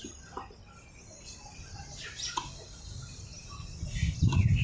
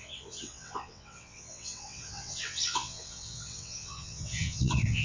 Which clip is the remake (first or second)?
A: second